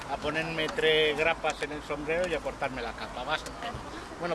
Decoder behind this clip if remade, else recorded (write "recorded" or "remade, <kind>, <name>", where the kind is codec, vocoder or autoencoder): recorded